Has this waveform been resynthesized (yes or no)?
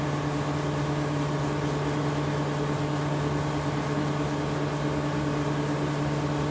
no